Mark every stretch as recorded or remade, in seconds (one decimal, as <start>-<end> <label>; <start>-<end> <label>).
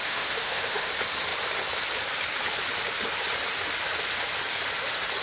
0.0-0.9 remade; 0.9-5.2 recorded